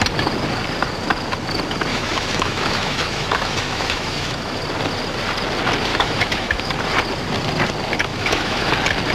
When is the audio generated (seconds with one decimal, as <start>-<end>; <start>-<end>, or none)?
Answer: 1.9-4.6; 5.9-6.7; 8.1-8.7